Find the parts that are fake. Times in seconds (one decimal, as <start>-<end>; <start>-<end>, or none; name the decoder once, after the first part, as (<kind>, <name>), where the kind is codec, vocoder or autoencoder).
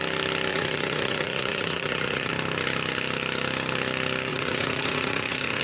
0.5-2.3 (vocoder, Vocos); 4.3-5.6